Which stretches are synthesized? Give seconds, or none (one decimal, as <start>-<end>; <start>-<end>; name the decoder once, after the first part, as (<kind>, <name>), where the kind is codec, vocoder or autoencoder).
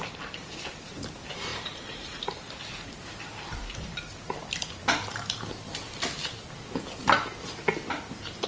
0.0-7.0 (vocoder, BigVGAN v2); 7.8-8.5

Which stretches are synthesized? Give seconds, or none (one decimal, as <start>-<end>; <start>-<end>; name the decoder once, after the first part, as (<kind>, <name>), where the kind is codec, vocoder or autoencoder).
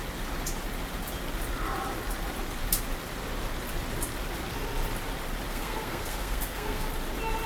5.5-6.9 (codec, SNAC)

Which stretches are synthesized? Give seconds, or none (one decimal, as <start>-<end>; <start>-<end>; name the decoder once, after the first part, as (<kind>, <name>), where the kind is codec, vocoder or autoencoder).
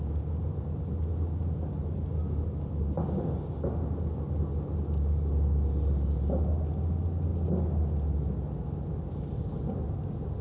none